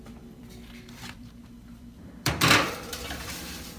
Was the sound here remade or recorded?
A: remade